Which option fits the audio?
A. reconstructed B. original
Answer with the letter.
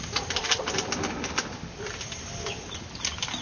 B